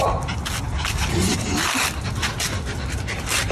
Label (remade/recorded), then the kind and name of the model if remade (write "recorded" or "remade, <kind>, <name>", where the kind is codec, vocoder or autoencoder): recorded